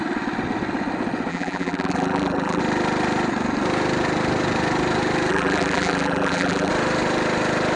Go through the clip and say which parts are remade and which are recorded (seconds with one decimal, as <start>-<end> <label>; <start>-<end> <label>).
0.0-1.3 recorded; 1.3-2.6 remade; 2.6-5.3 recorded; 5.3-6.7 remade; 6.7-7.8 recorded